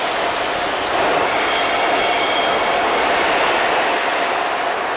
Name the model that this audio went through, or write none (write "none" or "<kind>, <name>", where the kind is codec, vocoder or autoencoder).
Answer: none